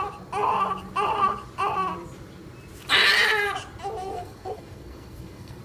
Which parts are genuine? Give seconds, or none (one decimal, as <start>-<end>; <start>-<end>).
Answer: 0.0-4.0